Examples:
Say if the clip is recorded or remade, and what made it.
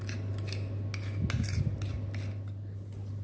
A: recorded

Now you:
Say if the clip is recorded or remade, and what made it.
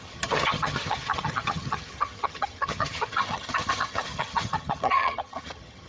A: remade, vocoder, HiFi-GAN